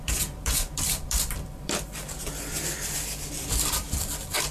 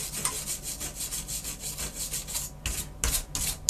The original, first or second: second